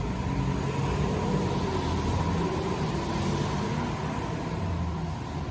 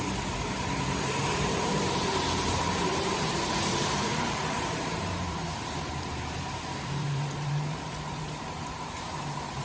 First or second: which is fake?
second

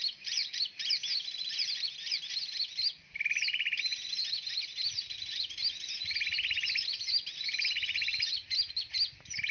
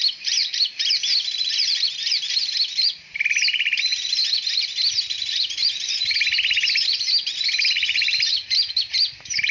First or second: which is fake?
second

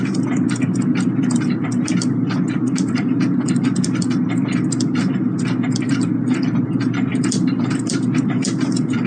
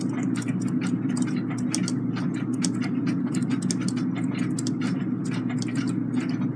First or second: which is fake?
first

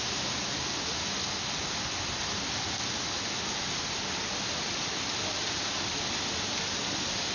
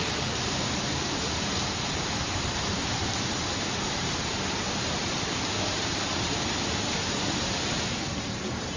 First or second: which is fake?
second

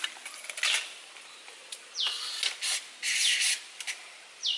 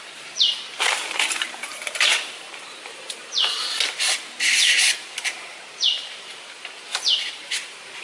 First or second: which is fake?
second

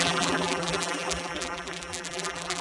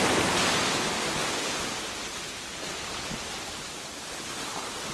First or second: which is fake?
first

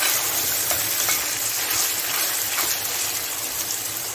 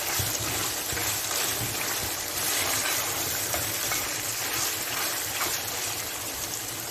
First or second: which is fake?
second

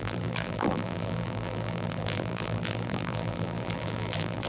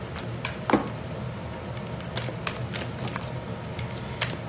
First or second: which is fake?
first